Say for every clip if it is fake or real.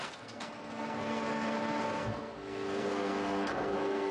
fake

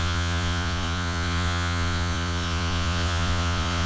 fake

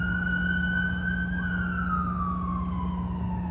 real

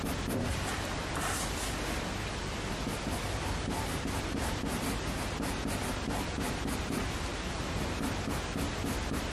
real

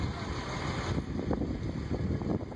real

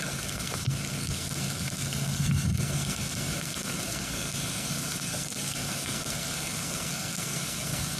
fake